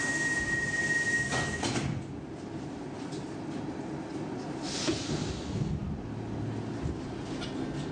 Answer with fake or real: real